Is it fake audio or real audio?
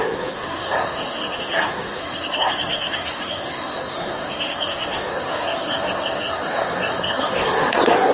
fake